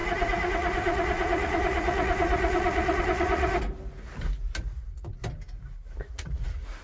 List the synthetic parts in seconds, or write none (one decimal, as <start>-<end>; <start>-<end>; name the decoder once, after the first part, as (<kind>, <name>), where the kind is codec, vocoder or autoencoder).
0.0-3.5 (vocoder, Vocos); 4.6-5.2; 6.1-6.8